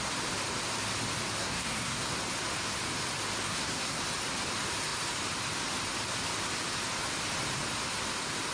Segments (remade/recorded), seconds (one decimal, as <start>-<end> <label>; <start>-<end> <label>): 0.0-1.4 recorded; 1.4-2.1 remade; 2.1-3.4 recorded; 3.4-4.0 remade; 4.0-8.5 recorded